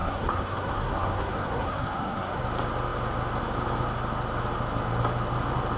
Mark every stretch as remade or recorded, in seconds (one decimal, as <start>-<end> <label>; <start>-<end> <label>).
0.0-2.4 remade; 2.4-5.8 recorded